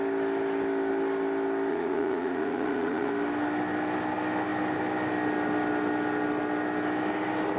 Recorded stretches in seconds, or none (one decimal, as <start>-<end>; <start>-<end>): 0.0-1.7; 3.1-7.6